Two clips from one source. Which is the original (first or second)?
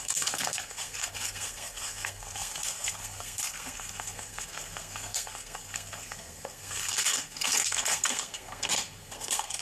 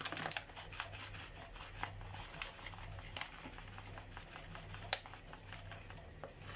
second